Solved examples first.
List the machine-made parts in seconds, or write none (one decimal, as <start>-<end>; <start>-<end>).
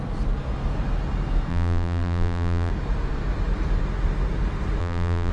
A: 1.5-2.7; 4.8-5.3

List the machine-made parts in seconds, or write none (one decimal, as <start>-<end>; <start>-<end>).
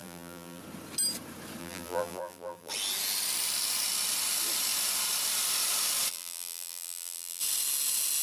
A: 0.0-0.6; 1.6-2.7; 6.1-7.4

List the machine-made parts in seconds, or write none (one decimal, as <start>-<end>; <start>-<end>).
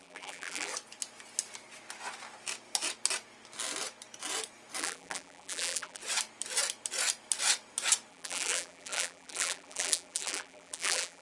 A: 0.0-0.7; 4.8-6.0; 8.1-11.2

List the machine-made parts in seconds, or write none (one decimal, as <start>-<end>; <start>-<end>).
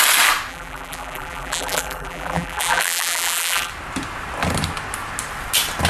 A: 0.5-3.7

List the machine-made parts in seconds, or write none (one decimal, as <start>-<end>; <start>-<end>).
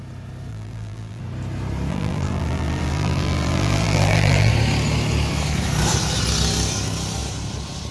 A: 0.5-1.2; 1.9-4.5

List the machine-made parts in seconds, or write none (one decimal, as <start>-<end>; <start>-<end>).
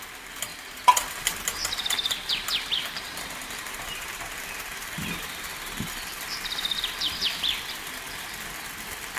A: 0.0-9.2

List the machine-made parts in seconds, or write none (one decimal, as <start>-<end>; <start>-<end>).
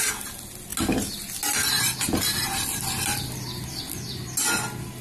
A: none